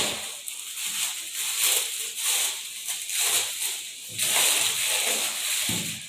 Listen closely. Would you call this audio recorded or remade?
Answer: recorded